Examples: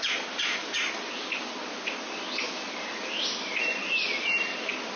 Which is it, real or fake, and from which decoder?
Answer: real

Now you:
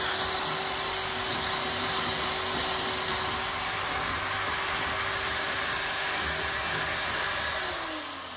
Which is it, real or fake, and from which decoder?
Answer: real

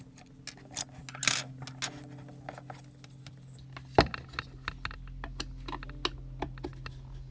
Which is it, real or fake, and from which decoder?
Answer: real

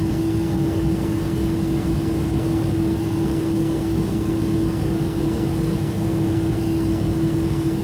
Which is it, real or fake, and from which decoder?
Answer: fake, codec, SNAC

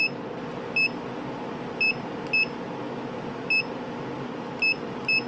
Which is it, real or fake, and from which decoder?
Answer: real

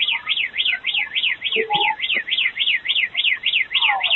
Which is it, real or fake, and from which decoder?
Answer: real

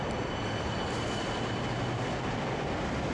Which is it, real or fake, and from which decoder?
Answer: real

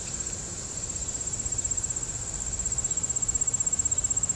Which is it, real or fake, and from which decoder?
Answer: real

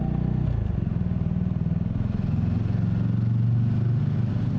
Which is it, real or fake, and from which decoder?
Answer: real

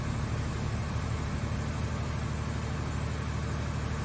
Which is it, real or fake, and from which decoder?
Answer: real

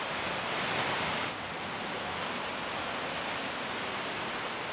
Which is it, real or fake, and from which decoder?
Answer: real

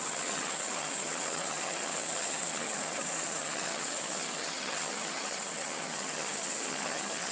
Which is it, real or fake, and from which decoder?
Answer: fake, vocoder, HiFi-GAN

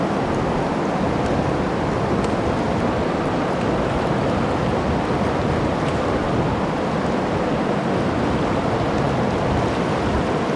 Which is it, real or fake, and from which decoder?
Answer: real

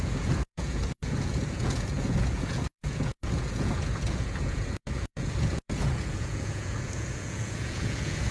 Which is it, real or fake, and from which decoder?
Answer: fake, vocoder, Vocos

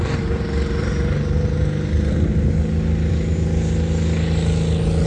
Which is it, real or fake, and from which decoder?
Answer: real